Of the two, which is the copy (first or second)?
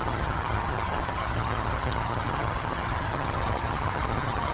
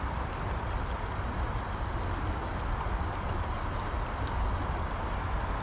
first